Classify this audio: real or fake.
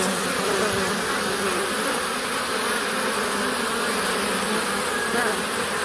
real